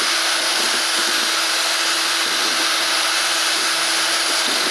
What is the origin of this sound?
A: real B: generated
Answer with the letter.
A